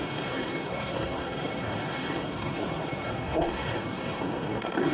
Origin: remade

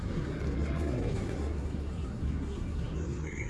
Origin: remade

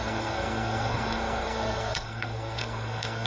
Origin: remade